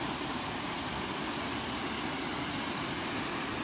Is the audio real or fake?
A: real